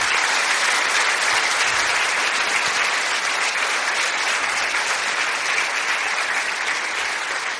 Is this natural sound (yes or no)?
yes